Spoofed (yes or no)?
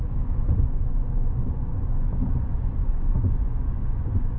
yes